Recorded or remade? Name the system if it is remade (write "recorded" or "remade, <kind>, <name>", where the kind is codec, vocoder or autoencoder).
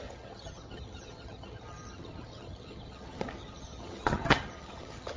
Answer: remade, vocoder, HiFi-GAN